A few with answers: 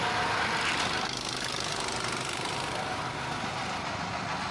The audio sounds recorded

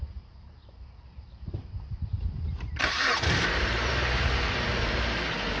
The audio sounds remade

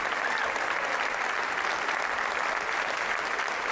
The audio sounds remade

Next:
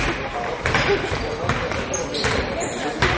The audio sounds recorded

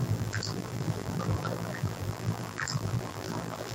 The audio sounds remade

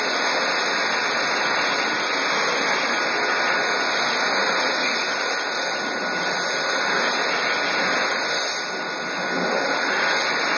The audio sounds recorded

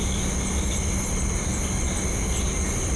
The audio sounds recorded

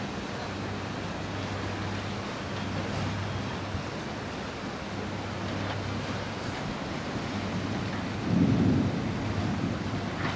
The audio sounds recorded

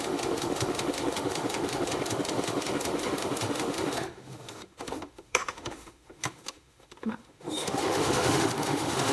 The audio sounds remade